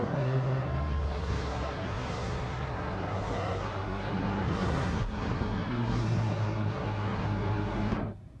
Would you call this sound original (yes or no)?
no